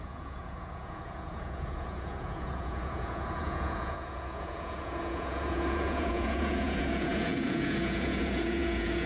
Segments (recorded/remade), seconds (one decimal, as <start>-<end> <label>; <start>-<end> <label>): 0.0-9.1 remade